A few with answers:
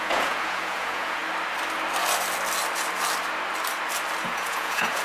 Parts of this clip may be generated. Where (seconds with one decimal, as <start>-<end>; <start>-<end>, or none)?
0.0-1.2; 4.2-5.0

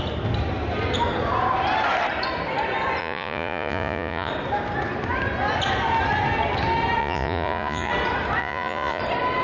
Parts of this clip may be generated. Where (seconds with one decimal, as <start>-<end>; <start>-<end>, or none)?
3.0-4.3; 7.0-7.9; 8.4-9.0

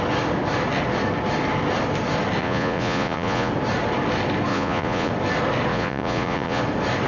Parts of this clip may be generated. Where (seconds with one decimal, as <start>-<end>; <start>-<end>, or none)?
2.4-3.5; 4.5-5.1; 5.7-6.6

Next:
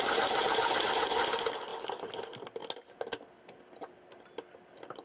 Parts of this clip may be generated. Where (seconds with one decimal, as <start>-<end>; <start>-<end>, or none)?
none